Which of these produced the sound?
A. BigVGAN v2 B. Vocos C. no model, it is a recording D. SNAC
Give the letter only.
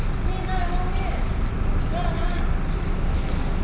C